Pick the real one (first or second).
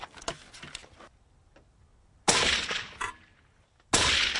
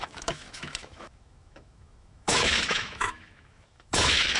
first